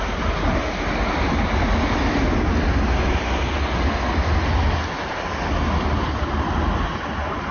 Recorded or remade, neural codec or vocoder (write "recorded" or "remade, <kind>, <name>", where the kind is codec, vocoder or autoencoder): recorded